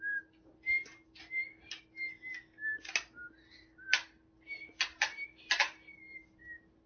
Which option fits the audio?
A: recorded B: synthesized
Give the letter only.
A